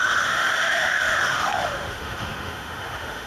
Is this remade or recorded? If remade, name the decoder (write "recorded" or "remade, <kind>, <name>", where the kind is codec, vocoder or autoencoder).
remade, autoencoder, DAC-VAE